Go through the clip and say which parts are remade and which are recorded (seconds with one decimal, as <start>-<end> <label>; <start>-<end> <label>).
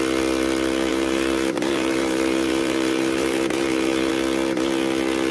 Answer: 0.0-0.9 recorded; 0.9-4.1 remade; 4.1-5.3 recorded